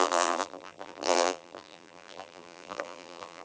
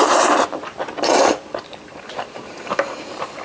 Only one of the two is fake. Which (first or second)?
first